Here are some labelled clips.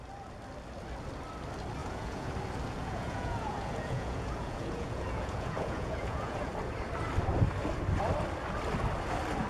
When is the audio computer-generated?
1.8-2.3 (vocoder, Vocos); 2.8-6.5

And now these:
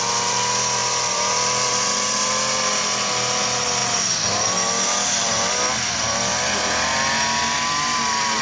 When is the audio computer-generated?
none

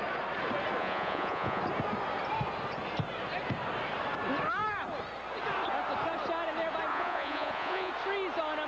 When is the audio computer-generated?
0.8-1.6 (vocoder, Vocos); 6.9-7.9